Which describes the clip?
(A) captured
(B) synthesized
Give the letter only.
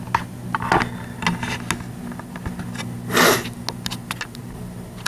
A